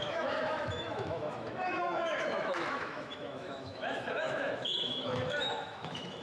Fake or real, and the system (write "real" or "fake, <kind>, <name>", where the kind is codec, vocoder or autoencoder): fake, autoencoder, DAC-VAE